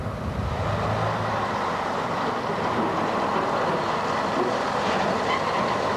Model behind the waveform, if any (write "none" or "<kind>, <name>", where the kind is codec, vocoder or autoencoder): none